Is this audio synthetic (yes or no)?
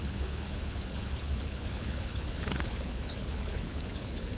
yes